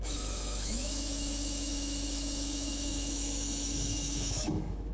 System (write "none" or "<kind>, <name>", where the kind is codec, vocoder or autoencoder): autoencoder, DAC-VAE